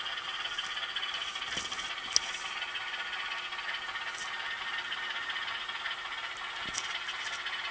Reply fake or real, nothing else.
real